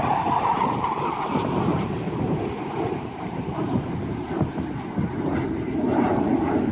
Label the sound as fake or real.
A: fake